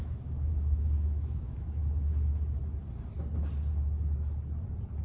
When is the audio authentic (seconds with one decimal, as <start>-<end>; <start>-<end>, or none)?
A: 1.8-5.0